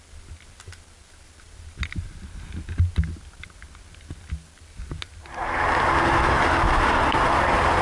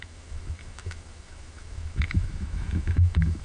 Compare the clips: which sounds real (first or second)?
first